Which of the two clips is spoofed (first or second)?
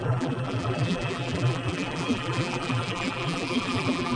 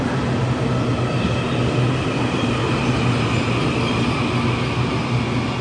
first